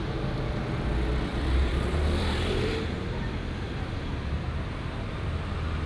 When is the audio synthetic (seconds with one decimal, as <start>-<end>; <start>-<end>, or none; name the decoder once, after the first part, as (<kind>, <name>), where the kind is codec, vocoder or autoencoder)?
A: 1.3-4.8 (vocoder, BigVGAN v2)